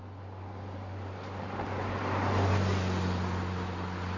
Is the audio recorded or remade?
recorded